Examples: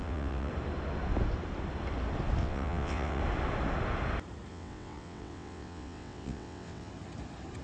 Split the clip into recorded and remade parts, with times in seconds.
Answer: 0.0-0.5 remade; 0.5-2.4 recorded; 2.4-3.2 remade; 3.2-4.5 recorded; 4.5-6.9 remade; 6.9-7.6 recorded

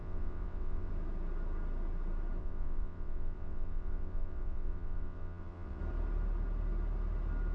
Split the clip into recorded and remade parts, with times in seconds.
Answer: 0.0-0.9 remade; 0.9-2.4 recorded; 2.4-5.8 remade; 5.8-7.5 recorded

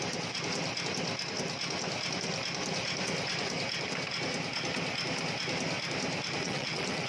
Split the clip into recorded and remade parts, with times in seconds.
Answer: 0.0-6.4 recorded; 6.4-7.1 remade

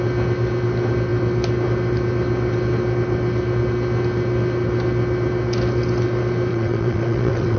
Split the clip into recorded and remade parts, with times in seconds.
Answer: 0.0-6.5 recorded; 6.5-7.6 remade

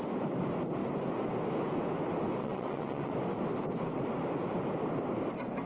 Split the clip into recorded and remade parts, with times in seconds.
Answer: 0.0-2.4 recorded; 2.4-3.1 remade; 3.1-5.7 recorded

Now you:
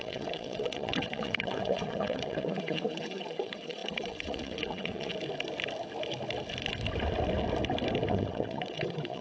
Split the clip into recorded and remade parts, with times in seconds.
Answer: 0.0-5.1 remade; 5.1-8.1 recorded; 8.1-9.2 remade

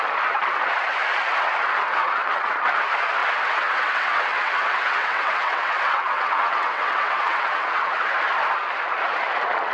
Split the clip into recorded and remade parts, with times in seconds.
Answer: 0.0-1.8 recorded; 1.8-2.5 remade; 2.5-3.2 recorded; 3.2-8.1 remade; 8.1-9.7 recorded